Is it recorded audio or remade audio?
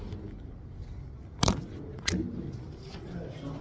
recorded